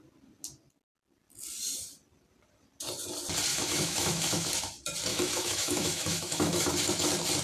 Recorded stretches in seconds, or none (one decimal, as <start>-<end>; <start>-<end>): 0.0-3.5; 4.5-5.1; 6.7-7.4